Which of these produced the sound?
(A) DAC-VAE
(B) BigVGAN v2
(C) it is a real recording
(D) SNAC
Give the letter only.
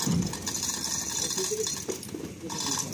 C